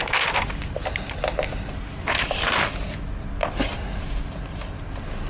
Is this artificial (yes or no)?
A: no